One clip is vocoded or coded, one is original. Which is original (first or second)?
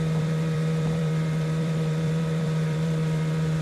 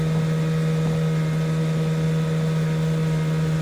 second